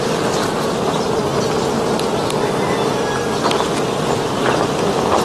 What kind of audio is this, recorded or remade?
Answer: recorded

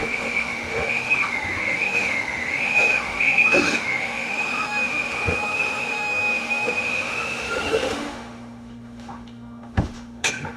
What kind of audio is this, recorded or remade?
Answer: remade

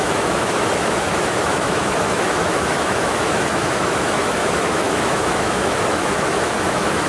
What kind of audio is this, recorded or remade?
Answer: remade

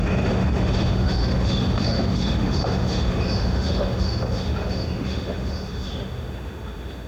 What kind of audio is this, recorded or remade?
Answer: remade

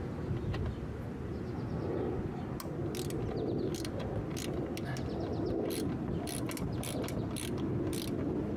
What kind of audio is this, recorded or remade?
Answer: recorded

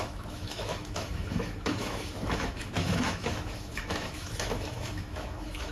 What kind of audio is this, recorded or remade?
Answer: remade